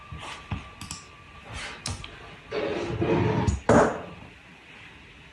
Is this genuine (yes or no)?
yes